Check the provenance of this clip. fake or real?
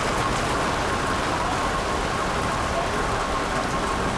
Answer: real